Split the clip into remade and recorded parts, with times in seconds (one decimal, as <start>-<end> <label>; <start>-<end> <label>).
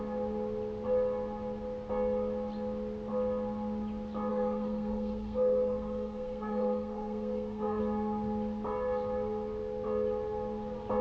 0.0-4.3 recorded; 4.3-7.8 remade; 7.8-11.0 recorded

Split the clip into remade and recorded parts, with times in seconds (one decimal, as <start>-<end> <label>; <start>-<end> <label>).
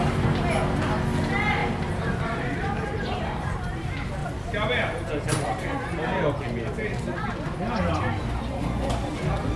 0.0-1.6 recorded; 1.6-3.8 remade; 3.8-4.2 recorded; 4.2-5.1 remade; 5.1-9.6 recorded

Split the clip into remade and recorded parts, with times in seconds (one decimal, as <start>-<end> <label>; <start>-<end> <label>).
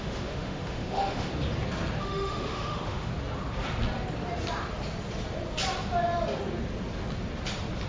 0.0-1.3 remade; 1.3-2.0 recorded; 2.0-3.1 remade; 3.1-7.9 recorded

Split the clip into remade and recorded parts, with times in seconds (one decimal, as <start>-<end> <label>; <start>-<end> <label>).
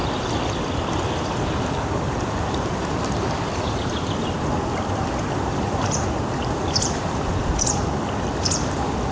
0.0-9.1 remade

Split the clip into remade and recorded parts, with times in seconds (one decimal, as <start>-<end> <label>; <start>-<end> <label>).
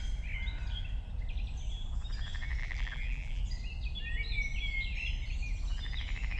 0.0-2.6 recorded; 2.6-3.4 remade; 3.4-6.4 recorded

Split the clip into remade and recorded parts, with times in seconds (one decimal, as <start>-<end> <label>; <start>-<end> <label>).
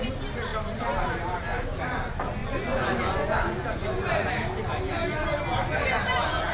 0.0-2.4 recorded; 2.4-4.3 remade; 4.3-6.5 recorded